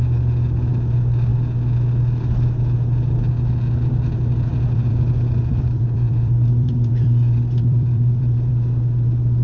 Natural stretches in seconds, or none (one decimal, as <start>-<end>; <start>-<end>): 0.0-4.5; 8.5-9.4